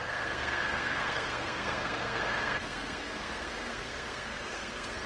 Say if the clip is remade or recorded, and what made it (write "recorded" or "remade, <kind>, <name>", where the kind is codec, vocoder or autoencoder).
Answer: remade, codec, SNAC